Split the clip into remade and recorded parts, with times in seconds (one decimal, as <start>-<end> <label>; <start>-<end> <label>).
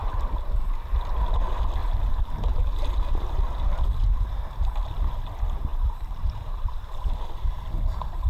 0.0-0.9 remade; 0.9-1.8 recorded; 1.8-2.9 remade; 2.9-5.7 recorded; 5.7-7.3 remade; 7.3-8.3 recorded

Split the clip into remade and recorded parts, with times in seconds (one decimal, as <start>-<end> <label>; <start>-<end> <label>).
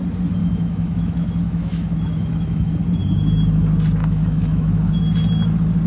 0.0-0.4 recorded; 0.4-2.7 remade; 2.7-4.0 recorded; 4.0-4.9 remade; 4.9-5.9 recorded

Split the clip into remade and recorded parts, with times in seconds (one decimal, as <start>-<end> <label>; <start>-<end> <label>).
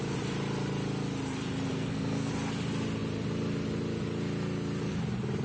0.0-1.7 recorded; 1.7-2.3 remade; 2.3-5.4 recorded